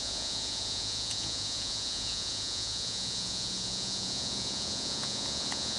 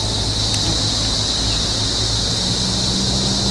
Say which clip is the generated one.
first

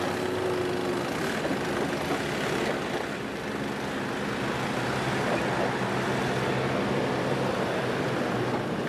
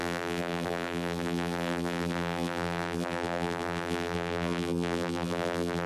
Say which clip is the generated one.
second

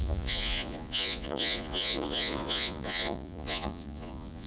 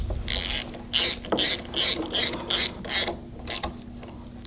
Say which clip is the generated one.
first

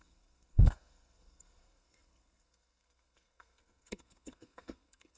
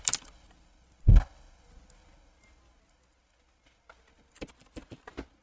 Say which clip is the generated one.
first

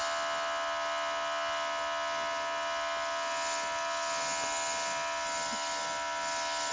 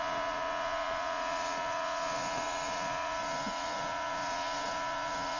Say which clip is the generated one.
second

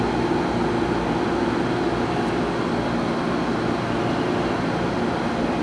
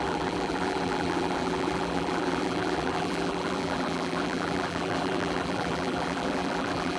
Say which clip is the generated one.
second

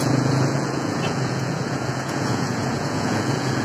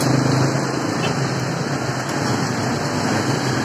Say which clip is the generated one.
first